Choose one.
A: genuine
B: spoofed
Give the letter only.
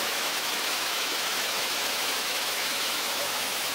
B